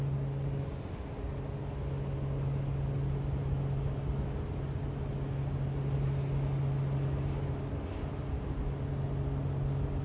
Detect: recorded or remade recorded